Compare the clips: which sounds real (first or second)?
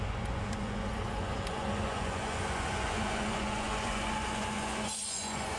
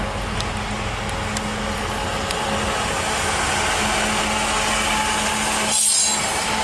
second